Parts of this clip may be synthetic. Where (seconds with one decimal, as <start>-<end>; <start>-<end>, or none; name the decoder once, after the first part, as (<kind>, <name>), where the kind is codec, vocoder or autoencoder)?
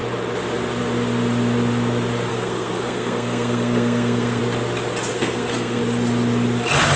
2.3-4.4 (codec, SNAC); 5.1-5.8